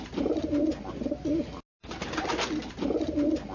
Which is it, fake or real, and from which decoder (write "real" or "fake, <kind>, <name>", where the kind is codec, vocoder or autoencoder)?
real